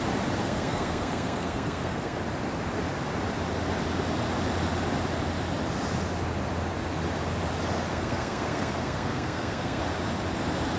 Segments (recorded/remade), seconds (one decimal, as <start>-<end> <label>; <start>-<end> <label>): 0.0-0.4 recorded; 0.4-2.2 remade; 2.2-7.9 recorded; 7.9-9.8 remade; 9.8-10.8 recorded

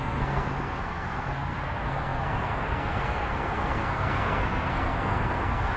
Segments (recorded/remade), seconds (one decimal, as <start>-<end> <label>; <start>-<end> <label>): 0.0-5.8 remade

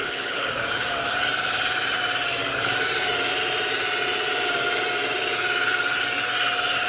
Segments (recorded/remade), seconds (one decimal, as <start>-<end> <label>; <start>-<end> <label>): 0.0-0.5 remade; 0.5-6.9 recorded

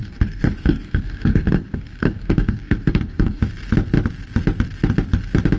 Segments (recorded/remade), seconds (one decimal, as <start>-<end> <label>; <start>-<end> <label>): 0.0-3.4 remade; 3.4-5.6 recorded

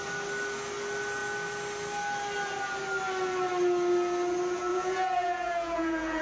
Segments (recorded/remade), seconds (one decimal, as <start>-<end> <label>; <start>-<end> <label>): 0.0-4.7 recorded; 4.7-6.2 remade